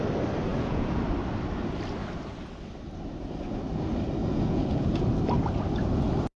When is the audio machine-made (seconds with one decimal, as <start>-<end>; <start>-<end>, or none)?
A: 0.5-1.0; 4.2-5.2